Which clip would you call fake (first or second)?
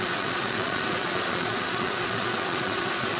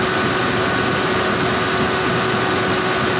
first